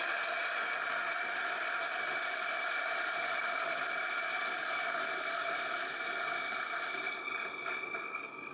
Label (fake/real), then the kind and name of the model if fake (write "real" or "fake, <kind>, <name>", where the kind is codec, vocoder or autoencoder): real